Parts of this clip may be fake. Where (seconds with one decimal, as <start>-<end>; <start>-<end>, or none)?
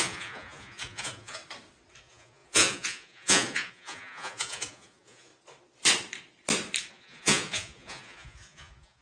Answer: 0.0-1.4; 2.0-5.3; 6.9-9.0